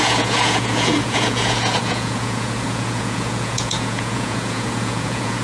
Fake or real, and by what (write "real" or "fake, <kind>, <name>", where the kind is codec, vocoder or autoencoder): fake, vocoder, Vocos